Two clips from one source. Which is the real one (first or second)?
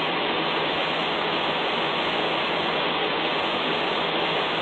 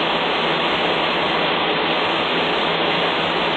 second